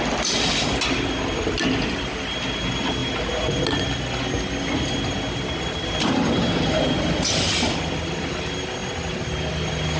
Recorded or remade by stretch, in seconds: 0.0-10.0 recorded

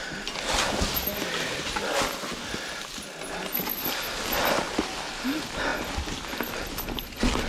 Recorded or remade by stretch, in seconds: 0.0-7.5 recorded

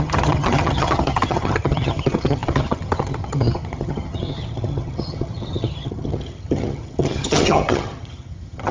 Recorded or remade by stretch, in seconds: 0.0-8.7 remade